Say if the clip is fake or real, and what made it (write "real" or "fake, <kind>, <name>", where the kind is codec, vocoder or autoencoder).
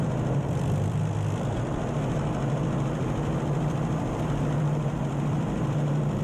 fake, vocoder, BigVGAN v2